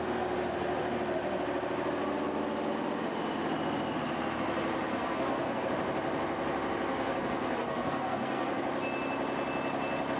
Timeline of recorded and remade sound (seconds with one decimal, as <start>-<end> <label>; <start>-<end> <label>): 0.0-4.9 recorded; 4.9-5.7 remade; 5.7-6.9 recorded; 6.9-8.6 remade; 8.6-10.2 recorded